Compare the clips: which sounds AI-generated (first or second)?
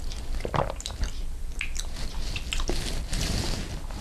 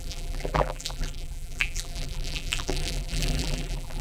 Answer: second